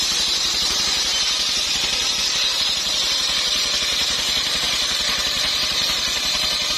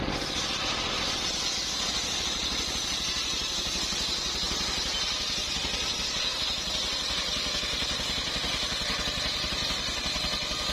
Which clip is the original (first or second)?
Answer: second